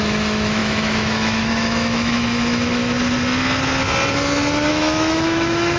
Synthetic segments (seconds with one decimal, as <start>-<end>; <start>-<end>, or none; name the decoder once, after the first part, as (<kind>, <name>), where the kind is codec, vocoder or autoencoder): 0.0-2.8 (autoencoder, DAC-VAE); 4.7-5.8

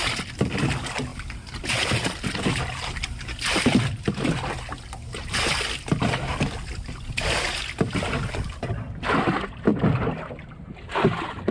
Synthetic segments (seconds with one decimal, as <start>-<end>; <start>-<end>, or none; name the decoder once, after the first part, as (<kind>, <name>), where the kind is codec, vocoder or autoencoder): 1.1-4.1 (vocoder, BigVGAN v2)

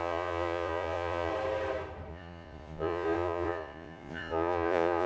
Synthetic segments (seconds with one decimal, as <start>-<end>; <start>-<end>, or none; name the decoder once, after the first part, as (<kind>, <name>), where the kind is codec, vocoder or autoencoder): 0.0-1.3 (vocoder, Vocos); 2.1-5.1

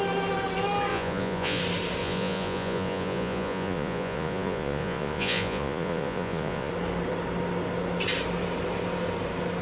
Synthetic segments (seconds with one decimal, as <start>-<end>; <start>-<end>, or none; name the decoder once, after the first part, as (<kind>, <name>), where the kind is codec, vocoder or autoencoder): 0.9-1.6 (vocoder, Vocos); 2.0-6.7

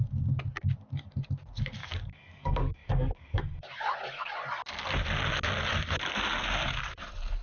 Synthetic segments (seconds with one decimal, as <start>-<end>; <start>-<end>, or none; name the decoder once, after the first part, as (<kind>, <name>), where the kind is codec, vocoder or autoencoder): 1.8-3.4 (codec, DAC)

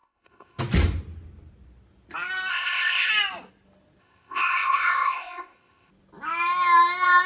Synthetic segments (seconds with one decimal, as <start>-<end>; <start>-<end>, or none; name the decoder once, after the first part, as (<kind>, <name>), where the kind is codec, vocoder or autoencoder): 0.0-0.6 (codec, ZipCodec); 2.5-3.1; 4.0-5.9